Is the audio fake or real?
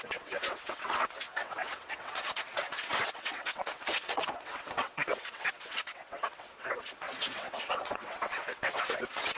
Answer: fake